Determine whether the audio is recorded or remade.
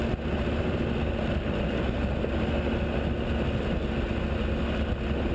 recorded